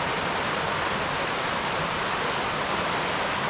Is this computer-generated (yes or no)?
no